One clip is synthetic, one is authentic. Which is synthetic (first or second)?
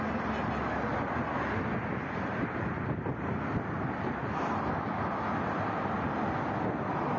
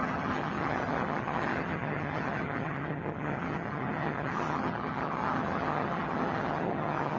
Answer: second